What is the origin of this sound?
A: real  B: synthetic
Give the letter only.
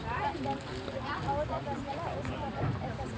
A